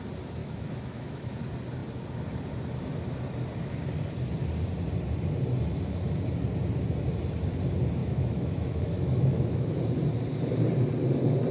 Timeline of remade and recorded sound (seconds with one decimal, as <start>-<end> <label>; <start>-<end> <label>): 0.0-0.4 recorded; 0.4-1.3 remade; 1.3-8.0 recorded; 8.0-9.8 remade; 9.8-11.5 recorded